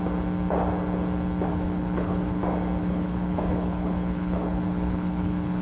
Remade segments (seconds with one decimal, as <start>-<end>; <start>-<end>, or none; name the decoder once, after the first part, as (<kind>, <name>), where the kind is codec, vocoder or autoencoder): 1.5-2.4 (codec, HILCodec); 2.8-5.6